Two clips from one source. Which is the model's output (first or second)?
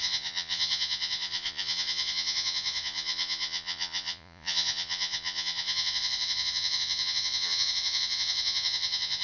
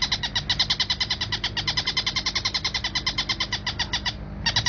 first